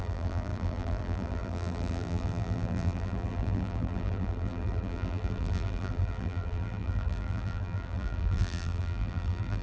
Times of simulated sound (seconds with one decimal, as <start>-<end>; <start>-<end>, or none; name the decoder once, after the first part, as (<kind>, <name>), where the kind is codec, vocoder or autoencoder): 0.0-9.6 (vocoder, BigVGAN v2)